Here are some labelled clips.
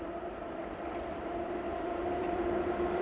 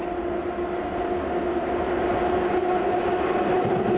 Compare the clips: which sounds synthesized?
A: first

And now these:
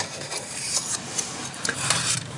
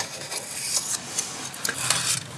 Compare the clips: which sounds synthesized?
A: first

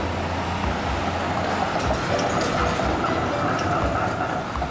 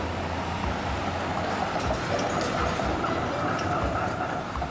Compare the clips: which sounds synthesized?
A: second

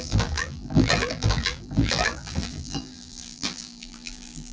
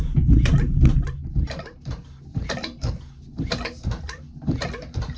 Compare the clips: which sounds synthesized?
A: first